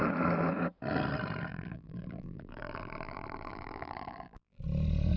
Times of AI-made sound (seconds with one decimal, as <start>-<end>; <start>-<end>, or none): 1.5-4.6